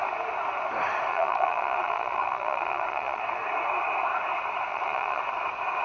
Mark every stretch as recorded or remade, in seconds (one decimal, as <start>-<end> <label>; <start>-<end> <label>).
0.0-1.1 recorded; 1.1-3.2 remade; 3.2-4.7 recorded; 4.7-5.2 remade; 5.2-5.8 recorded